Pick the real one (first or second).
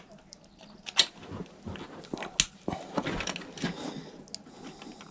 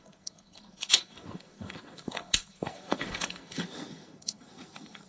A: first